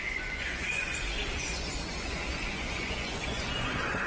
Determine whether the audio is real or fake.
fake